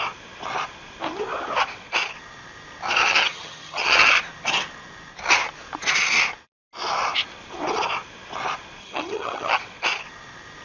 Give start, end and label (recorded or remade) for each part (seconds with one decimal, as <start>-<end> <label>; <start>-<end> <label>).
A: 0.0-3.0 recorded; 3.0-4.1 remade; 4.1-8.8 recorded; 8.8-9.6 remade; 9.6-10.6 recorded